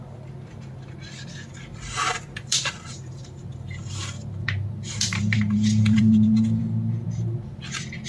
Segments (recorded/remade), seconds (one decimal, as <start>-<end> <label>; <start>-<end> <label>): 0.0-1.7 recorded; 1.7-6.6 remade; 6.6-8.1 recorded

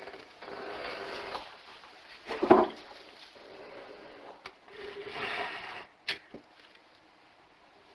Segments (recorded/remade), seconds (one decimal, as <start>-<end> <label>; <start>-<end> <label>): 0.0-4.2 remade; 4.2-7.3 recorded; 7.3-7.9 remade

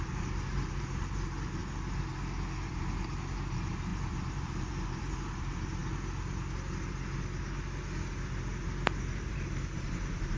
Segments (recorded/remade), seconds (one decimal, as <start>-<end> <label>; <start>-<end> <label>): 0.0-1.6 remade; 1.6-2.7 recorded; 2.7-5.8 remade; 5.8-9.0 recorded; 9.0-10.4 remade

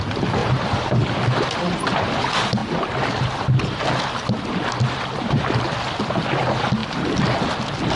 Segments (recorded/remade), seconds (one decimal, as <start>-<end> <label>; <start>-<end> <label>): 0.0-0.4 recorded; 0.4-1.1 remade; 1.1-8.0 recorded

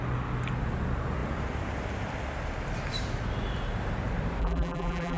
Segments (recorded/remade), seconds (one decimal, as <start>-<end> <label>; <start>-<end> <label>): 0.0-4.4 recorded; 4.4-5.2 remade

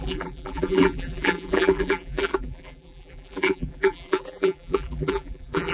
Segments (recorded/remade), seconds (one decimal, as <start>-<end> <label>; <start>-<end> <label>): 0.0-5.7 remade

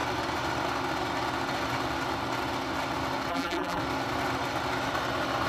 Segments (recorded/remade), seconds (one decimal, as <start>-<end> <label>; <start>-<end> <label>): 0.0-3.3 recorded; 3.3-3.8 remade; 3.8-5.5 recorded

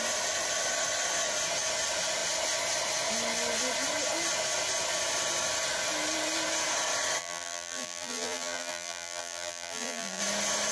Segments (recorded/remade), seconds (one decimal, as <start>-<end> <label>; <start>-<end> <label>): 0.0-7.2 recorded; 7.2-10.2 remade; 10.2-10.7 recorded